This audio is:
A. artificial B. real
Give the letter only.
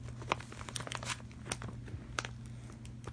B